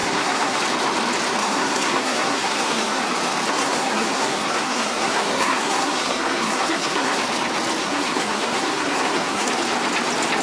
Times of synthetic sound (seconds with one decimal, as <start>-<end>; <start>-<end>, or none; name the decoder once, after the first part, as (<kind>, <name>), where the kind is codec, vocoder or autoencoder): 0.0-0.6 (codec, SNAC); 1.4-3.0; 3.5-7.2; 7.8-9.5